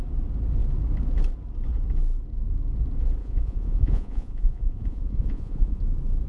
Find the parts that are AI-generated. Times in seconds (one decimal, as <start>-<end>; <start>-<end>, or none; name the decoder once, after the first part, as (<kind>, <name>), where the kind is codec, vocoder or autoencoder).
3.2-5.8 (vocoder, Vocos)